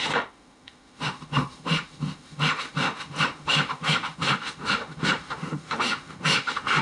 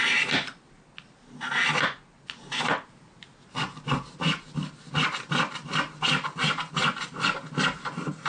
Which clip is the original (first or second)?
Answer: second